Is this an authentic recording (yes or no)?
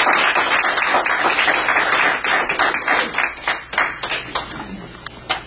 yes